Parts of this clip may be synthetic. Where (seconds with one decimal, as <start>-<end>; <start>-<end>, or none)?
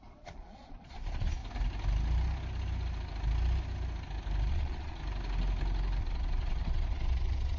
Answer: 0.0-1.4; 4.5-5.0; 6.0-7.6